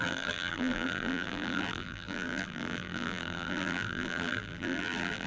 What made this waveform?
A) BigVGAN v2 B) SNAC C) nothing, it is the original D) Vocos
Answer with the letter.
A